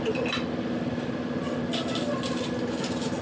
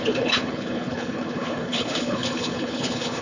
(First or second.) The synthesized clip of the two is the second